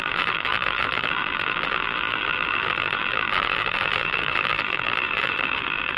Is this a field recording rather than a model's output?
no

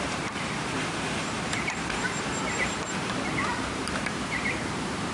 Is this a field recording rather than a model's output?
no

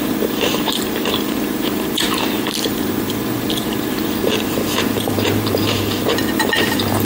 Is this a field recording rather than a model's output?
no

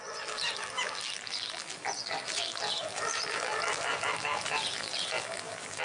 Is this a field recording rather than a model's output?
no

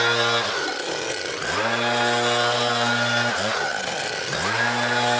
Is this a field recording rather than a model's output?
yes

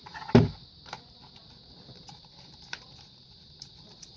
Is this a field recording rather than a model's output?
yes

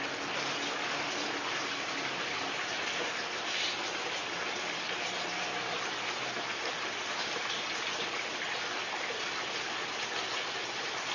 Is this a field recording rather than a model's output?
yes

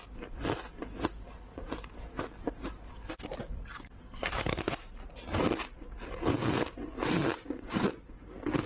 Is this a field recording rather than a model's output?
yes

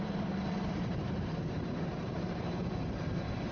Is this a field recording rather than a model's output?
no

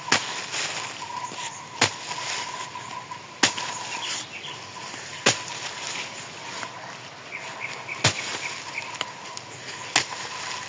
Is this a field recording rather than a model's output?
yes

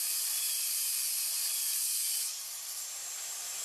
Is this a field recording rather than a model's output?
no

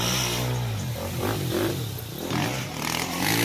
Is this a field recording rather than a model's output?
yes